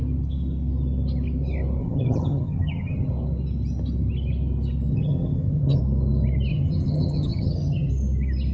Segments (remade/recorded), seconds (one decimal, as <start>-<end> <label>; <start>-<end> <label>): 0.0-1.8 recorded; 1.8-3.1 remade; 3.1-4.9 recorded; 4.9-5.8 remade; 5.8-6.5 recorded; 6.5-7.9 remade; 7.9-8.5 recorded